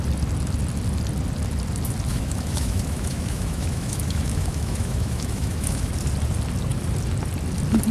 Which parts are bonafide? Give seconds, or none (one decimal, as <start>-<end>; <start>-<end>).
0.0-2.1; 5.9-7.9